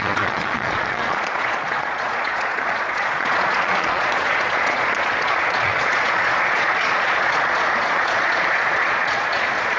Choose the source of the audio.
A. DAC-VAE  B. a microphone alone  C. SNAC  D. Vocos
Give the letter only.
D